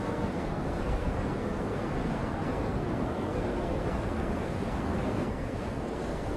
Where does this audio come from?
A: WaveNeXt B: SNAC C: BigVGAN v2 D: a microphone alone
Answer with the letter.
B